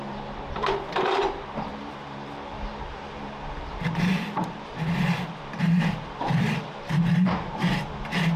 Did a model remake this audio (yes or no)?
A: yes